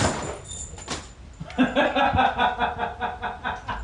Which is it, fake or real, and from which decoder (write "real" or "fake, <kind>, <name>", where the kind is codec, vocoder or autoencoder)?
real